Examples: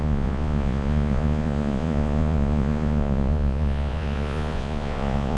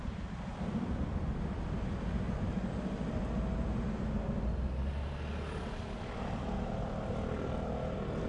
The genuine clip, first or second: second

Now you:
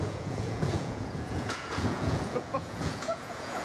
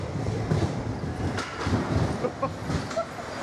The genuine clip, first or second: second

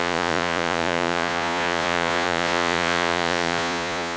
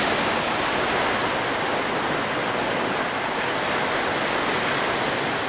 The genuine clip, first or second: second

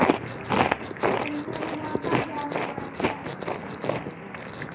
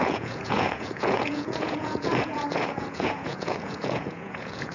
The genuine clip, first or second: first